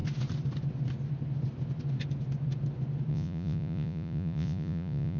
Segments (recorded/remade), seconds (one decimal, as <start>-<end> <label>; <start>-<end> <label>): 0.0-3.1 recorded; 3.1-5.2 remade

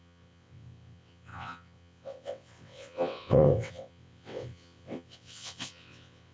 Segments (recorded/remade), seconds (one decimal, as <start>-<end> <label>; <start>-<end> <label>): 0.0-6.3 remade

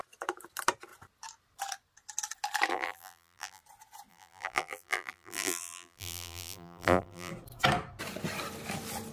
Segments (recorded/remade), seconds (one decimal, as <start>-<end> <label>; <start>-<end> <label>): 0.0-2.7 recorded; 2.7-3.6 remade; 3.6-4.1 recorded; 4.1-7.3 remade; 7.3-9.1 recorded

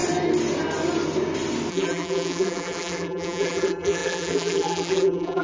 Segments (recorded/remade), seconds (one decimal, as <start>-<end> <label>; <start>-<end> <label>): 0.0-1.7 recorded; 1.7-5.4 remade

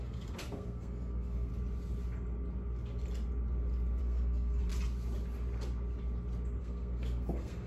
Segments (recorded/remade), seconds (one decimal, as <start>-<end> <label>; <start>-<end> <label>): 0.0-1.5 remade; 1.5-4.0 recorded; 4.0-4.7 remade; 4.7-6.6 recorded; 6.6-7.7 remade

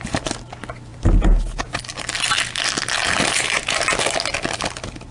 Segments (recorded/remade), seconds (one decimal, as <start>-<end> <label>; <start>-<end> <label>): 0.0-5.1 recorded

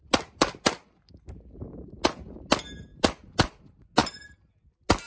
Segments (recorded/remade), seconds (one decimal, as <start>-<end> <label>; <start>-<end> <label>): 0.0-2.9 recorded; 2.9-3.6 remade; 3.6-4.0 recorded; 4.0-4.5 remade; 4.5-5.1 recorded

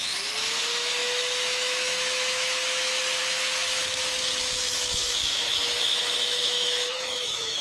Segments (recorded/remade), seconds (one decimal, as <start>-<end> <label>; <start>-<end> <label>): 0.0-7.6 remade